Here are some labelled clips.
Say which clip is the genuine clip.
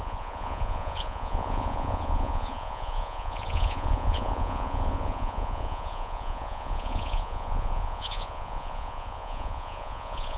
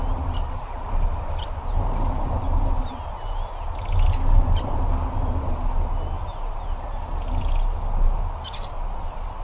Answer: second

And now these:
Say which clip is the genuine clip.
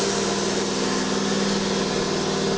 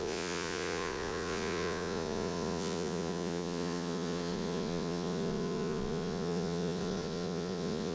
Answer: first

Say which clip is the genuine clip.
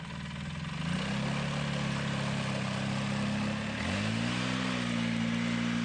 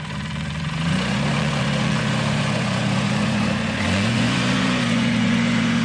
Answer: first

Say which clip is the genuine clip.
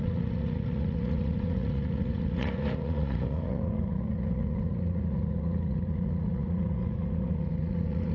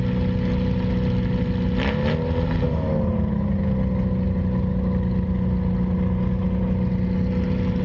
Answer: second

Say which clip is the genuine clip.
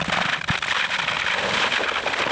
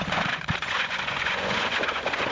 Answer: first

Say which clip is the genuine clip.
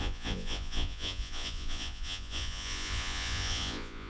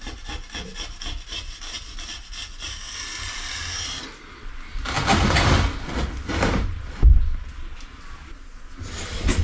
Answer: second